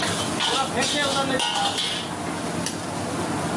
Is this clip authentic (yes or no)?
yes